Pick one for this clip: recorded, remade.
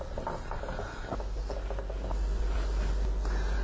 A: recorded